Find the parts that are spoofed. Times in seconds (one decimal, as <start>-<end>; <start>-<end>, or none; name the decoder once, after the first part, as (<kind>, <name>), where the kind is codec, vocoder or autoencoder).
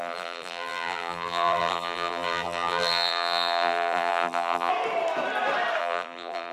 0.0-4.7 (vocoder, BigVGAN v2); 5.8-6.5